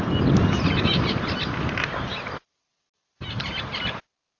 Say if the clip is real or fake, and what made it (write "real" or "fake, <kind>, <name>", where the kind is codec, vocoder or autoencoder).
real